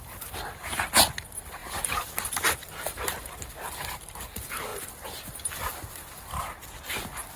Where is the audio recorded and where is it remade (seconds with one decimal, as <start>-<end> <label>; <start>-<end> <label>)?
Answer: 0.0-1.6 recorded; 1.6-2.1 remade; 2.1-7.4 recorded